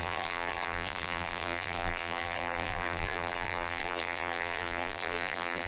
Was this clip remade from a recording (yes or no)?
yes